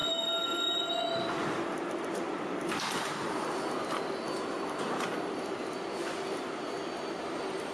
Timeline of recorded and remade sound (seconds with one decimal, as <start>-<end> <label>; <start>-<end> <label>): 0.0-7.7 recorded